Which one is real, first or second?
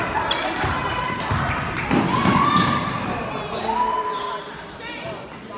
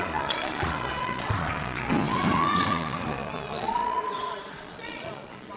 first